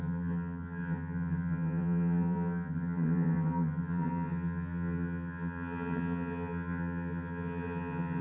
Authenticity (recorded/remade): remade